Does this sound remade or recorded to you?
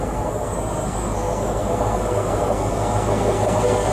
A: remade